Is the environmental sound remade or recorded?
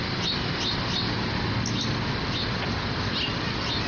recorded